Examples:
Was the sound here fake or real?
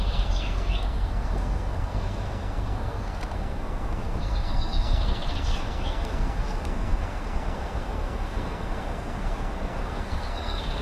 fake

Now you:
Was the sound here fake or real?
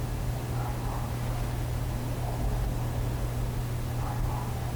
real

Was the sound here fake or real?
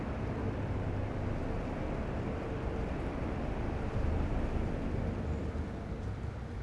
fake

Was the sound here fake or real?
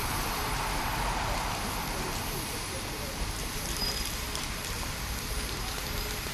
fake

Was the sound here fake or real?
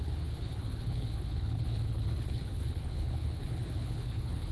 fake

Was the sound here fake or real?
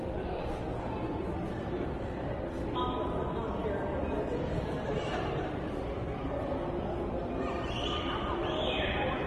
real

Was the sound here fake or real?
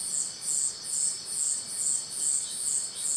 real